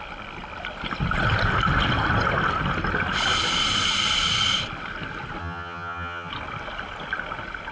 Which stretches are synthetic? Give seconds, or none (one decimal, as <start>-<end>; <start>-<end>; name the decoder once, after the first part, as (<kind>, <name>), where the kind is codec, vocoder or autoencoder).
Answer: 5.4-6.3 (vocoder, HiFi-GAN)